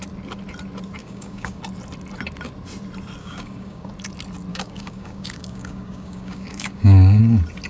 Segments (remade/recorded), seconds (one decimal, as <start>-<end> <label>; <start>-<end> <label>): 0.0-1.0 recorded; 1.0-1.6 remade; 1.6-3.2 recorded; 3.2-3.9 remade; 3.9-4.5 recorded; 4.5-7.2 remade; 7.2-7.7 recorded